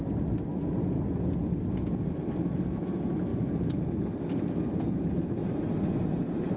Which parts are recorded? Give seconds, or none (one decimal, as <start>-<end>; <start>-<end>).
0.0-6.6